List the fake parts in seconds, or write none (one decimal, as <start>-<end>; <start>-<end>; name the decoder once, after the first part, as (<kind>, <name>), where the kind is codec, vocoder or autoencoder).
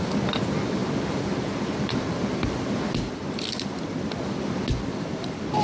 0.8-4.0 (vocoder, BigVGAN v2)